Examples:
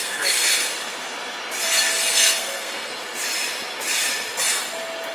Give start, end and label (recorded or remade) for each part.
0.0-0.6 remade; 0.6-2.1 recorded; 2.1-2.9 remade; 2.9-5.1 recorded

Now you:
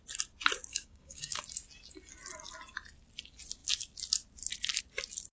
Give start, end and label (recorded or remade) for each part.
0.0-0.7 recorded; 0.7-1.4 remade; 1.4-5.3 recorded

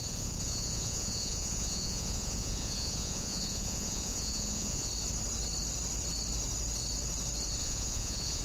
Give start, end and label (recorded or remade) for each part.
0.0-4.9 remade; 4.9-7.6 recorded; 7.6-8.4 remade

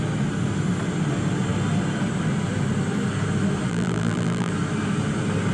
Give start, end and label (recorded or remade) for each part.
0.0-3.7 recorded; 3.7-4.5 remade; 4.5-5.5 recorded

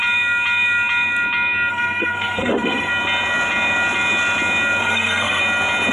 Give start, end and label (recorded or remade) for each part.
0.0-1.7 recorded; 1.7-2.9 remade; 2.9-4.8 recorded; 4.8-5.4 remade; 5.4-5.9 recorded